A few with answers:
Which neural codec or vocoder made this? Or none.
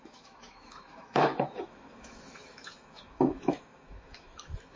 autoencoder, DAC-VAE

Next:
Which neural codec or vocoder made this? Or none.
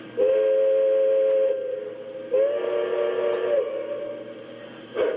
none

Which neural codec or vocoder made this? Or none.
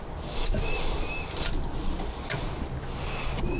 none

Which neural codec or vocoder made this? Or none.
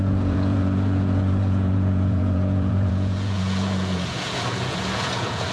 vocoder, Vocos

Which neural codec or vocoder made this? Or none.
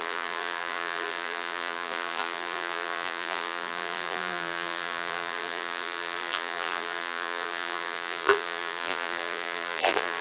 vocoder, BigVGAN v2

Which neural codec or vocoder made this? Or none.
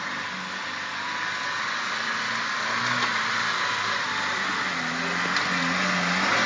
none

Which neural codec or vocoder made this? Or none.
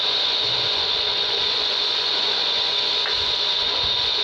vocoder, Vocos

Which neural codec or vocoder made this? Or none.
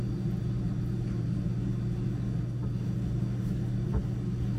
none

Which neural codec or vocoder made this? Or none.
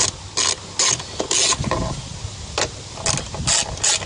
none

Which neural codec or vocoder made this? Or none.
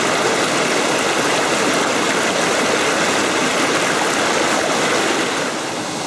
none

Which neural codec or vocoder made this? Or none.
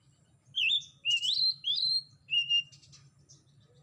none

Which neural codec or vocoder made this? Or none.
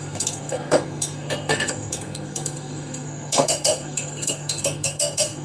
codec, SNAC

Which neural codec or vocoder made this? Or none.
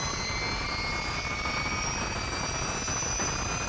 vocoder, BigVGAN v2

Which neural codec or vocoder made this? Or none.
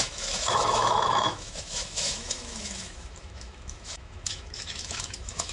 autoencoder, DAC-VAE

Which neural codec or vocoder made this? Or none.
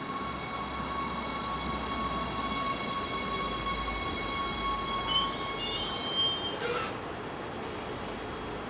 none